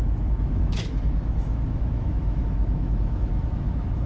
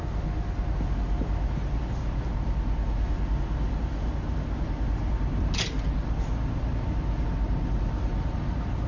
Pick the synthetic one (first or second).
first